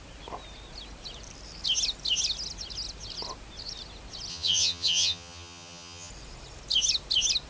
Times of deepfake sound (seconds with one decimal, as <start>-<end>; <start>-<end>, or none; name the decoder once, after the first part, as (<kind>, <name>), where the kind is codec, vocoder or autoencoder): 4.3-6.1 (vocoder, HiFi-GAN)